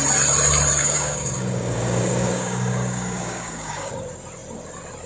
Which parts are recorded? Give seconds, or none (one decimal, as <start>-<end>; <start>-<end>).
0.0-0.8; 3.9-5.1